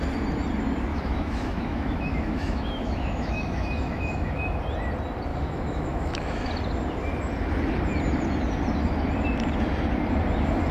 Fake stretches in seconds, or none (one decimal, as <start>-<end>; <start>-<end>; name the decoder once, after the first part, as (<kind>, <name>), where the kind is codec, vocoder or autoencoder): 0.9-4.6 (autoencoder, DAC-VAE); 5.3-6.5